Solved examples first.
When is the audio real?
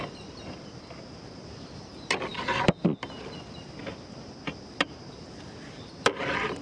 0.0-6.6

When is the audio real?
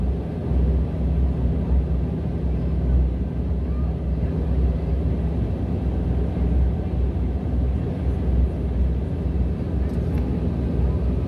0.0-11.3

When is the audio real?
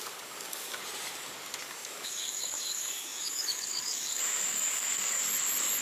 0.8-1.6; 5.2-5.8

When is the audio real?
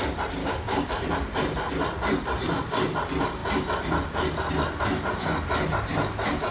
0.0-0.4; 0.9-6.5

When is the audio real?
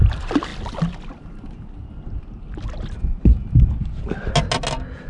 0.0-5.1